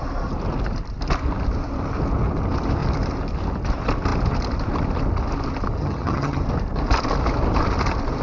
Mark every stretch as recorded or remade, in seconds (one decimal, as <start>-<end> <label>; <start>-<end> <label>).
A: 0.0-5.8 recorded; 5.8-6.4 remade; 6.4-8.2 recorded